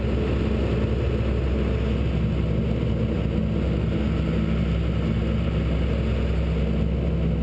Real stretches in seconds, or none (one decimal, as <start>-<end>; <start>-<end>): 0.0-7.4